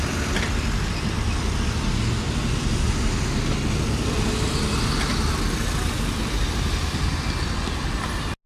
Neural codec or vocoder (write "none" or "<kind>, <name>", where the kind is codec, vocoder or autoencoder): none